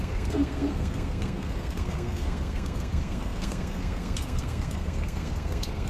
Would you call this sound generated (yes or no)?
yes